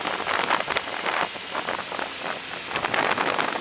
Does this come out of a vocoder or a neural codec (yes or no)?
no